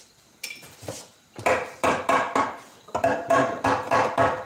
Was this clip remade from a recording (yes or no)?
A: no